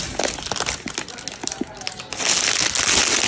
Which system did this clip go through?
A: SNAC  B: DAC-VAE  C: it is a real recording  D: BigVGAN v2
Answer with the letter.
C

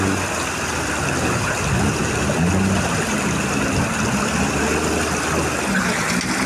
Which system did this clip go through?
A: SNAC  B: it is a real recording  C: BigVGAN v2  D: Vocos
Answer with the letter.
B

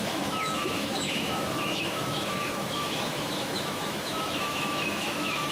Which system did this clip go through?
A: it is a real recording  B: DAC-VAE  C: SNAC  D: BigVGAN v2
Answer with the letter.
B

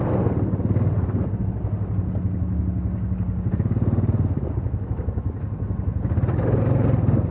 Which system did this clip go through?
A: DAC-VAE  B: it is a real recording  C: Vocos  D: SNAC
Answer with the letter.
B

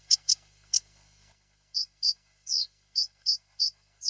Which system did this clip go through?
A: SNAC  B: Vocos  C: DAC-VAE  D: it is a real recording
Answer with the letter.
A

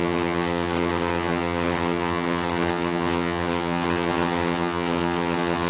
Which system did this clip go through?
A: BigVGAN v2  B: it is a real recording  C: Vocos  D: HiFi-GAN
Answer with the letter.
D